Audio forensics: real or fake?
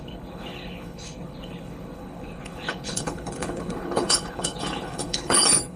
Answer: fake